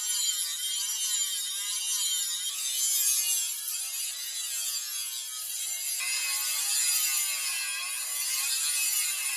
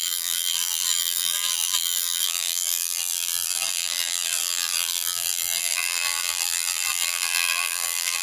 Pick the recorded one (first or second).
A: first